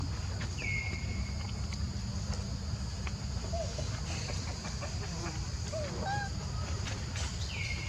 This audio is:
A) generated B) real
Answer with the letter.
B